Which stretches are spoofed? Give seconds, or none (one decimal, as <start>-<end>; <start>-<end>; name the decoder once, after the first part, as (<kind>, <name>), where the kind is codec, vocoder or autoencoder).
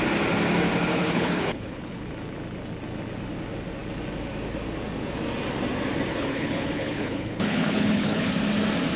0.9-2.1 (codec, HILCodec); 6.1-8.3